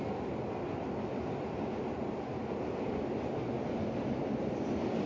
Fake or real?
real